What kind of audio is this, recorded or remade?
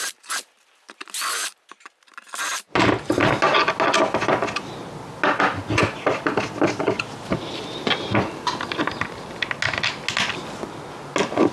recorded